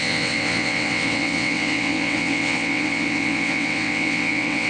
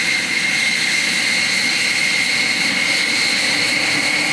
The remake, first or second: first